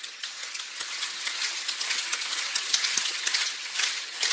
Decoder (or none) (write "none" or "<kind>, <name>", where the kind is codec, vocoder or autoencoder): vocoder, HiFi-GAN